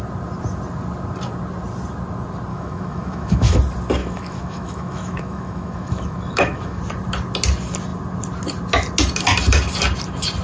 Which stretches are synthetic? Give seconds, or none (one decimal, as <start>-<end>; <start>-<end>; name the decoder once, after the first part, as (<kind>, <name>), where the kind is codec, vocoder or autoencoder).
2.5-3.6 (autoencoder, DAC-VAE); 4.0-6.8

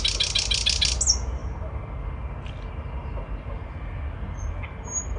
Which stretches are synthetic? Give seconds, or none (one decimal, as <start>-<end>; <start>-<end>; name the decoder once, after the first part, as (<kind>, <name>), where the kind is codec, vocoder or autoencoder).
none

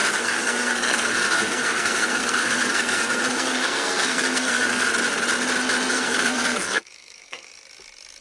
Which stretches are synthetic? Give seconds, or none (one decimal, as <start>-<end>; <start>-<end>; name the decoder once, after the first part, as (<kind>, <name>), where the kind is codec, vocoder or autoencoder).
0.0-4.9 (codec, SNAC); 5.9-7.5

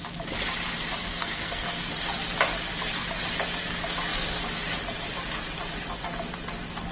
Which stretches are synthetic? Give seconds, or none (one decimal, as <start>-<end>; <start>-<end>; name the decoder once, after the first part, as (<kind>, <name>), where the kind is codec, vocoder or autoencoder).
1.0-1.9 (codec, SNAC)

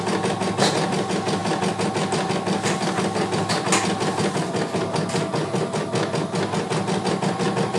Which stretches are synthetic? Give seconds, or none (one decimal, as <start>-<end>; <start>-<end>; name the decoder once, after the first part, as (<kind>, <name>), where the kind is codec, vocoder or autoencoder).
none

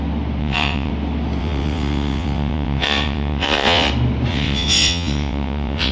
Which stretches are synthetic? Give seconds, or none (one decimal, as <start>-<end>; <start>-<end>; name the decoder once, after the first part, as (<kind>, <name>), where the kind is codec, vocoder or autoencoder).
0.4-0.9 (vocoder, WaveNeXt); 1.4-3.9; 4.3-5.9

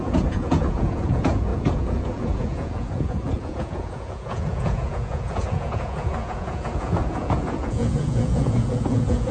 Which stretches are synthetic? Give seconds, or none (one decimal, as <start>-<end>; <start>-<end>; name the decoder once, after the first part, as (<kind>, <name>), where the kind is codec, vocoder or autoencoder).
0.0-9.3 (vocoder, Vocos)